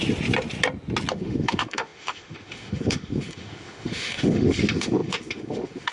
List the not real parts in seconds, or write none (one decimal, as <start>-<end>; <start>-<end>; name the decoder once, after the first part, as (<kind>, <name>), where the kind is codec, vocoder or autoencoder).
1.1-5.9 (autoencoder, DAC-VAE)